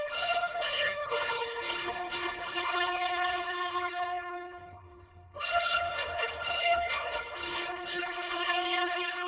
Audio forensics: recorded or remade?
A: remade